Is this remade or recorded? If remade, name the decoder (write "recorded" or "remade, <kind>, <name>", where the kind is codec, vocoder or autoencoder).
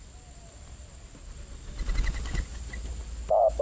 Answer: recorded